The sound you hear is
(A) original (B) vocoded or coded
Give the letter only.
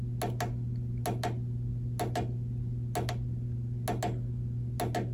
A